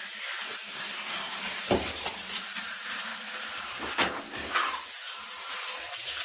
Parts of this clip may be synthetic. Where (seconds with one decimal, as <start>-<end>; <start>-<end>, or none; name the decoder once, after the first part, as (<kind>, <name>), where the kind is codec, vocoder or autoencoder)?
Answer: 0.7-1.4 (codec, SNAC)